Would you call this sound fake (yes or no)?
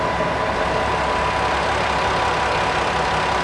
no